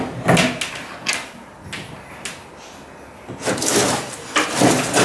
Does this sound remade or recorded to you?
recorded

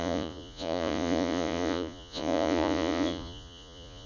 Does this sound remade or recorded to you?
remade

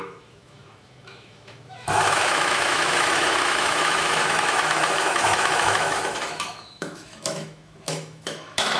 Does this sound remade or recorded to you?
remade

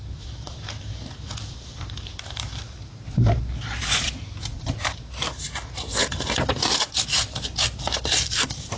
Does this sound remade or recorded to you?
remade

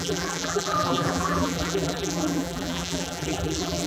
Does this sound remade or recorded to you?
remade